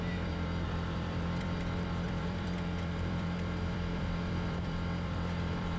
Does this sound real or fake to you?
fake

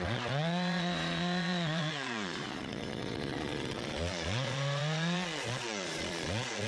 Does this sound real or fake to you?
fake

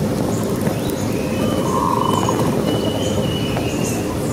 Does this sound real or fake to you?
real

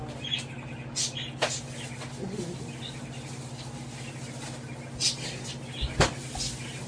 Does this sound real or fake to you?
real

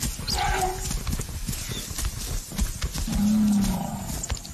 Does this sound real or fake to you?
real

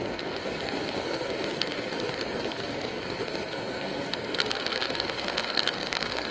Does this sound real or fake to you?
fake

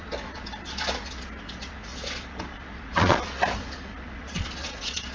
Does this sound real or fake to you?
fake